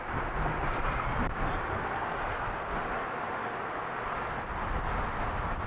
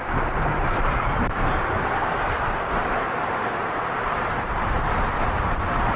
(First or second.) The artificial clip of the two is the second